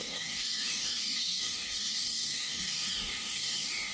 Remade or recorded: remade